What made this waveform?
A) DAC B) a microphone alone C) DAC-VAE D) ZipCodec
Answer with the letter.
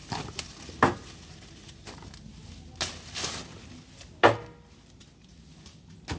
B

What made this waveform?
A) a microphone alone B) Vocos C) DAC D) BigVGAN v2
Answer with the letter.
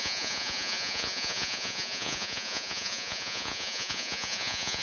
B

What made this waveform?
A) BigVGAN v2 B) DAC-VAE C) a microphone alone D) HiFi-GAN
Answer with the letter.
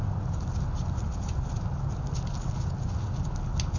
C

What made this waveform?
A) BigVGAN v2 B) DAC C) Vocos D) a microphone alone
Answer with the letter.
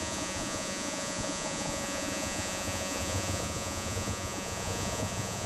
C